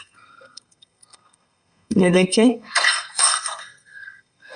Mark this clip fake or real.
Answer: fake